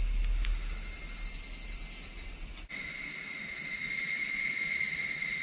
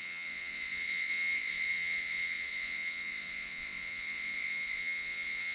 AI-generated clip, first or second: second